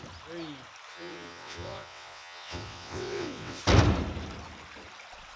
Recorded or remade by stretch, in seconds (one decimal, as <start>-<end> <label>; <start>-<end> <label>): 0.0-0.9 recorded; 0.9-3.6 remade; 3.6-5.4 recorded